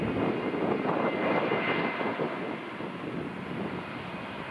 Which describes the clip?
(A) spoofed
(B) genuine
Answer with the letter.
B